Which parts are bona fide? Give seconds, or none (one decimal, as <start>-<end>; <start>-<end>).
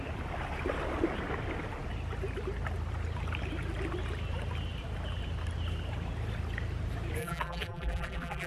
0.0-7.2